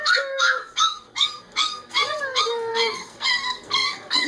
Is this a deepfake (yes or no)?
yes